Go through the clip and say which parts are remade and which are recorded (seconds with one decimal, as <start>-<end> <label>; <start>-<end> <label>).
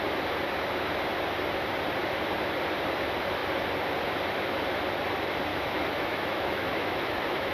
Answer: 0.0-5.5 recorded; 5.5-7.5 remade